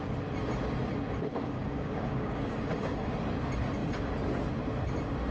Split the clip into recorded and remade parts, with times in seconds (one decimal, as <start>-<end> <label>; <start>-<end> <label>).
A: 0.0-1.3 recorded; 1.3-3.1 remade; 3.1-5.3 recorded